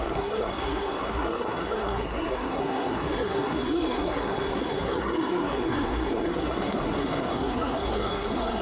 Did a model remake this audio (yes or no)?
yes